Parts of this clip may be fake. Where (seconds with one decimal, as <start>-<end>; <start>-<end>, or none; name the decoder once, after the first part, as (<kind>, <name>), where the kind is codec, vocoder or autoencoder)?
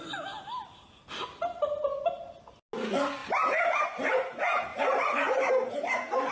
4.7-5.5 (vocoder, BigVGAN v2)